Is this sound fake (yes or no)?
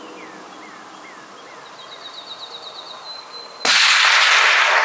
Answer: no